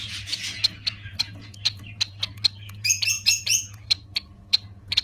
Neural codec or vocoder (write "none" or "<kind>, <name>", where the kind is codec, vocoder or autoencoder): vocoder, Vocos